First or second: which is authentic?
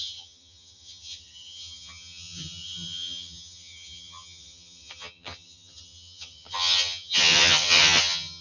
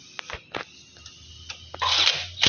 second